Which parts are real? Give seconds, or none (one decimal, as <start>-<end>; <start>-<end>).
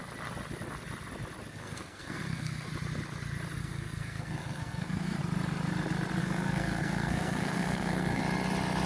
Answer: 0.0-1.5; 2.7-3.6; 5.2-6.2; 8.2-8.9